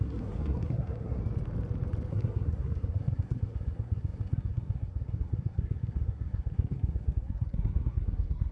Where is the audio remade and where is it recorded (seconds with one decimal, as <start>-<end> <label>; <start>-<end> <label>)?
0.0-1.2 remade; 1.2-2.1 recorded; 2.1-8.5 remade